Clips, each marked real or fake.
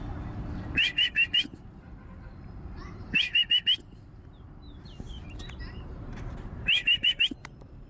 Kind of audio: fake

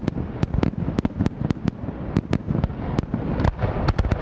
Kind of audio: real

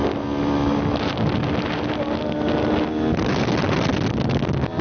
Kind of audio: real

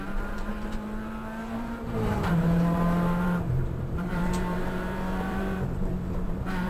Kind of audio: fake